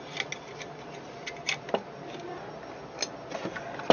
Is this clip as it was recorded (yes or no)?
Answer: yes